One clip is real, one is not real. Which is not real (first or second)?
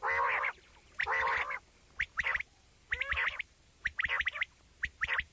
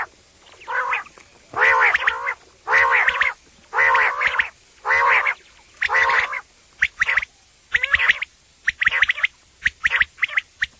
first